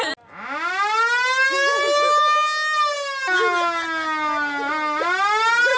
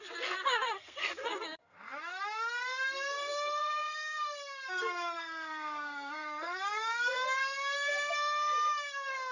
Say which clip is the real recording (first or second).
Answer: first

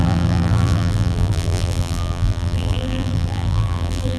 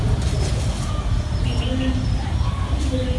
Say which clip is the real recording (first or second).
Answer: second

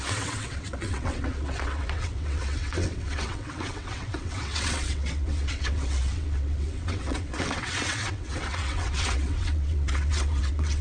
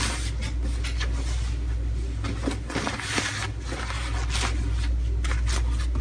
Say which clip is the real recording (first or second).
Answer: second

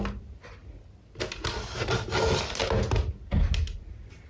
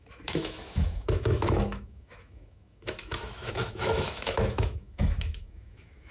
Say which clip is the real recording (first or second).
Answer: first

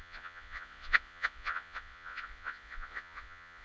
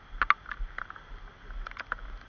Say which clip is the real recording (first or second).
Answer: second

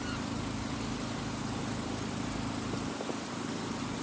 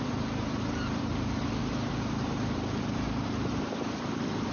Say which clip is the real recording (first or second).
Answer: first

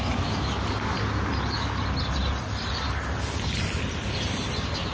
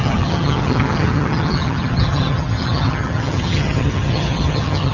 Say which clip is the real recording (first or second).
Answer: first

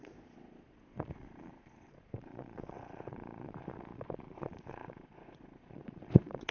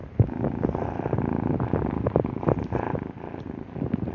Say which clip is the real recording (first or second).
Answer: second